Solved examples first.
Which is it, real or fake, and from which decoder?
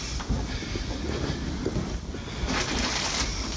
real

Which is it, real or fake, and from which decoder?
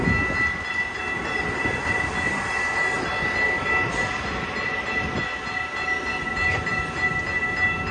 real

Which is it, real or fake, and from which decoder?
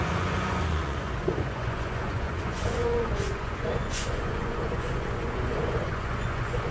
fake, vocoder, Vocos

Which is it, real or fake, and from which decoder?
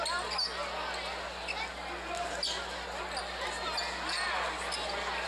real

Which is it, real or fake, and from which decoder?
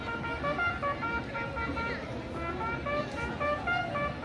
real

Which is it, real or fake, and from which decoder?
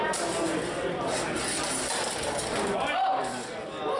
real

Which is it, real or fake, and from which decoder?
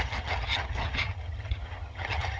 fake, vocoder, HiFi-GAN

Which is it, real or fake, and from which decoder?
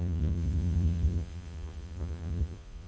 fake, vocoder, Vocos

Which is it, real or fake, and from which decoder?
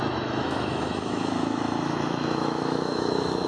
fake, autoencoder, DAC-VAE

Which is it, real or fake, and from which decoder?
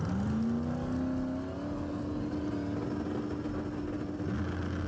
real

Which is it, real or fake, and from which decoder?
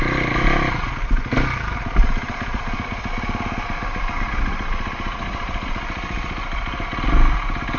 real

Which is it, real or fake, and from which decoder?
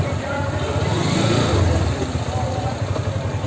real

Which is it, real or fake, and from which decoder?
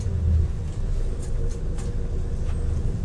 real